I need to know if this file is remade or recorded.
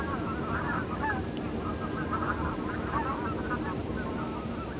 recorded